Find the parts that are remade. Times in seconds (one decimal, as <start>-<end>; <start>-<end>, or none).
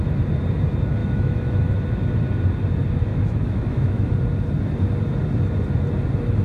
1.0-1.7; 3.1-4.1